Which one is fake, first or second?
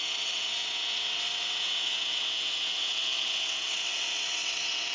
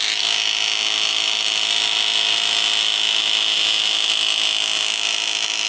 first